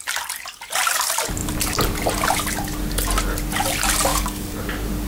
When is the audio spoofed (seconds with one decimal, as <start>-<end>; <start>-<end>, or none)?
4.1-4.6